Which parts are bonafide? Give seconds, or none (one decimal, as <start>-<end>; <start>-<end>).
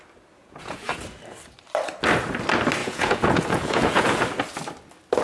0.0-0.4; 1.0-2.8; 4.2-5.2